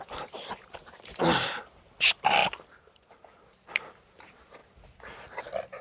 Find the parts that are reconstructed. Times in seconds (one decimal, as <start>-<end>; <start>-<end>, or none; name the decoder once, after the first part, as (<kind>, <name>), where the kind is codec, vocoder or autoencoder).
0.0-4.6 (vocoder, BigVGAN v2)